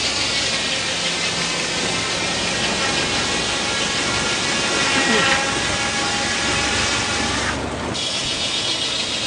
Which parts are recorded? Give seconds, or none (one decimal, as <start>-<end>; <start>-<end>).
0.0-8.2; 8.7-9.3